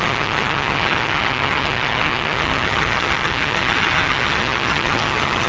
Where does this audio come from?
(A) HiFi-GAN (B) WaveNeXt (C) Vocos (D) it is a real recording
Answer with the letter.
A